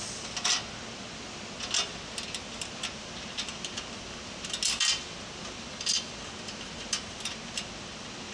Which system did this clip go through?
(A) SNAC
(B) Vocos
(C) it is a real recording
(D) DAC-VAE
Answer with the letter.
C